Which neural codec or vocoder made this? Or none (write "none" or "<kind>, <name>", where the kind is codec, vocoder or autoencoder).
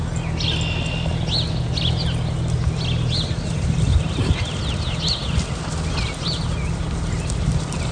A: none